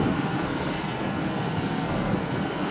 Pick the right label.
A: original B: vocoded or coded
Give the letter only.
B